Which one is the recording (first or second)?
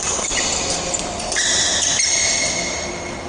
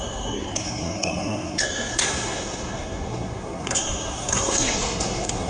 first